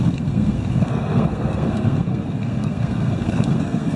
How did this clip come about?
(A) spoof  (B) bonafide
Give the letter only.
A